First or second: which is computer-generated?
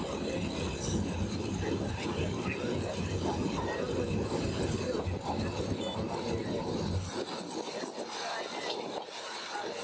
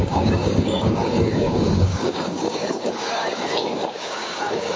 second